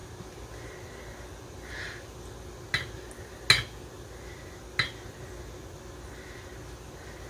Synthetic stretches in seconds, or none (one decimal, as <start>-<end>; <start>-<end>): none